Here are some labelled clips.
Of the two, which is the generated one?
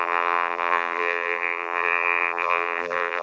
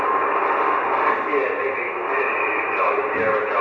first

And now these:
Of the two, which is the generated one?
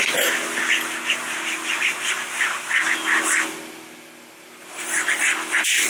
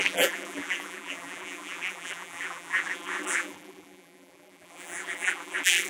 second